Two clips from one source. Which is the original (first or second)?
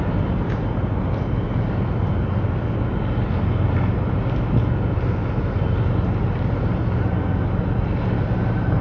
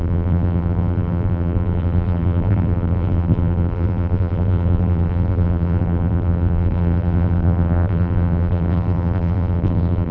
first